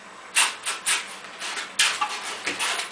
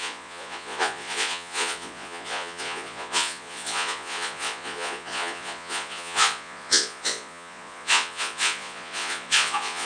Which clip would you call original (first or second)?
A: first